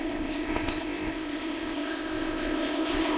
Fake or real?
fake